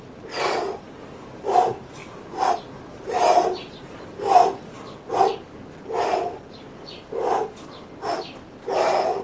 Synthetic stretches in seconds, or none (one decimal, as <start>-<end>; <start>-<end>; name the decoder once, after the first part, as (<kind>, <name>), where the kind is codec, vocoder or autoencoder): none